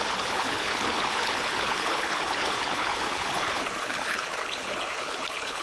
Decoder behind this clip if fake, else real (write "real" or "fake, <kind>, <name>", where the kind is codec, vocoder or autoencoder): fake, codec, HILCodec